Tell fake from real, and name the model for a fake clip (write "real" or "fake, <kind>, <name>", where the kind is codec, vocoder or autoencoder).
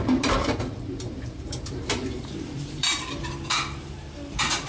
fake, vocoder, BigVGAN v2